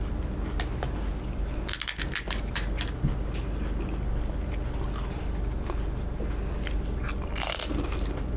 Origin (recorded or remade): recorded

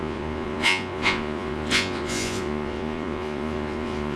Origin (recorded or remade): remade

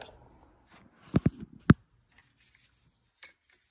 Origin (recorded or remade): recorded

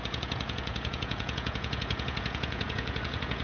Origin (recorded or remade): remade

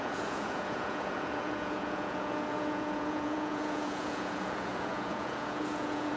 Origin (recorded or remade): remade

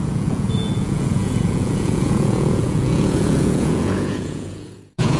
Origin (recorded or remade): remade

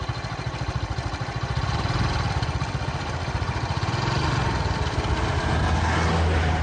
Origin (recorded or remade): recorded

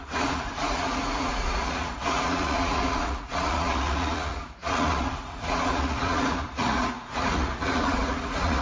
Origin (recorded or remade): remade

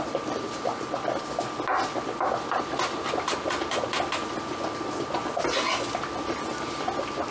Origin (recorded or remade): recorded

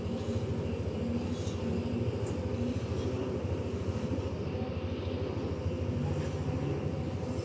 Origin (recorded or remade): recorded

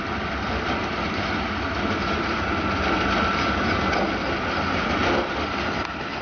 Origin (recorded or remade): recorded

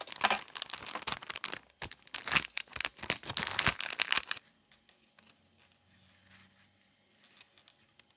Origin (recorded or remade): recorded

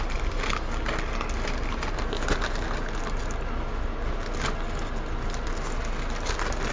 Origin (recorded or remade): recorded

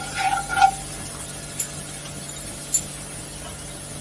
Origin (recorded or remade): recorded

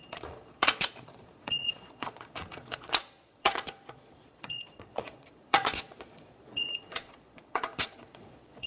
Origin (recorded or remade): remade